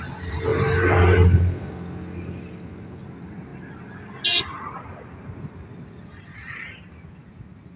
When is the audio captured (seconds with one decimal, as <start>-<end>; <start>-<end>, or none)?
0.0-0.5; 1.7-7.8